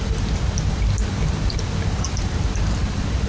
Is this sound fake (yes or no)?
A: no